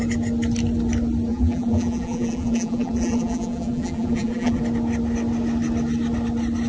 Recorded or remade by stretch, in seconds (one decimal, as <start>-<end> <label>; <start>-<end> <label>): 0.0-1.3 recorded; 1.3-4.6 remade; 4.6-6.7 recorded